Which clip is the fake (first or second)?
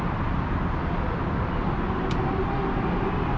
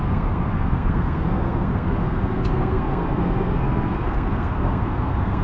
second